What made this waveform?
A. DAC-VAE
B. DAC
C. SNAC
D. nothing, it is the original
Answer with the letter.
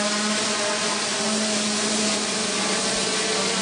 D